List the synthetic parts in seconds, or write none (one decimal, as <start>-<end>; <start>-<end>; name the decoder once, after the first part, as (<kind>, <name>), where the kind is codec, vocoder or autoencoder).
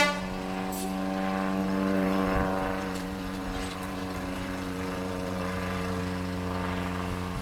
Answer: 1.6-6.0 (vocoder, BigVGAN v2)